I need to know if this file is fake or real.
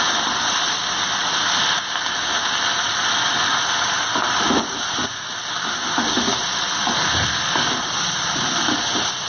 real